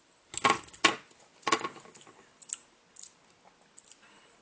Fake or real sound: real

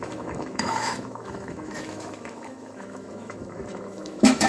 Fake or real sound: fake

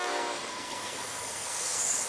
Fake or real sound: fake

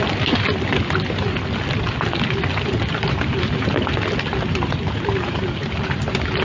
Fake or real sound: real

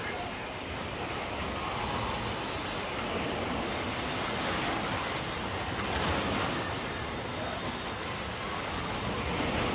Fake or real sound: real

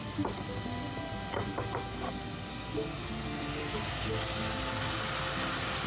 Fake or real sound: real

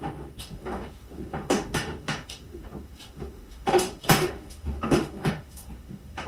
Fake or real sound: fake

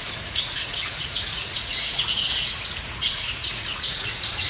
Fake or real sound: fake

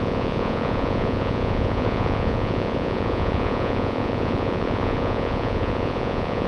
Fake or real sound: fake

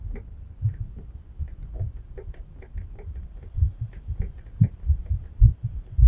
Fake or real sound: real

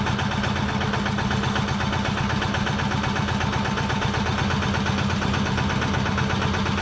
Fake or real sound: real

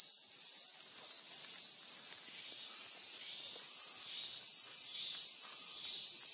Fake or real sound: real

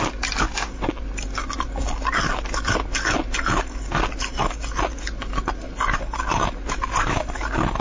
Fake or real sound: real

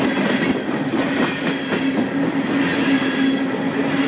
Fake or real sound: real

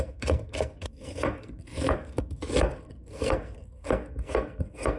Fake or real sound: fake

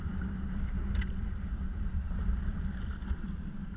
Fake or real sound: real